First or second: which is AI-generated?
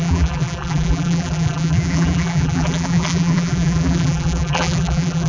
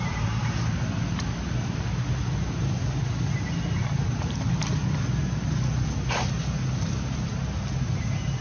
first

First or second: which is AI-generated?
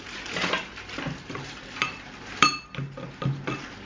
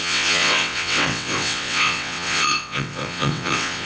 second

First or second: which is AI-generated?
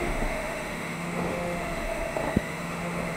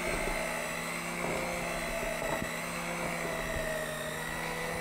first